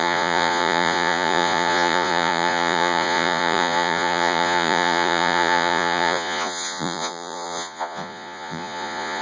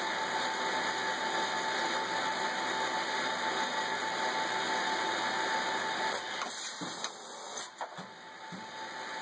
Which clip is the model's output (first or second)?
first